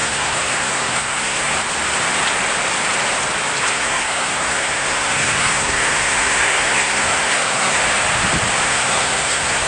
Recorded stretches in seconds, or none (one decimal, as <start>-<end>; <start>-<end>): 1.5-3.7; 7.8-8.6